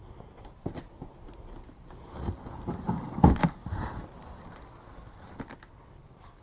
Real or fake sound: real